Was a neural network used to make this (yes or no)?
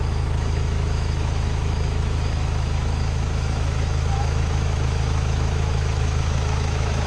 yes